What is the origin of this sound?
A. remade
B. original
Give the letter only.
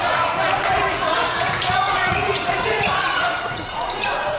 A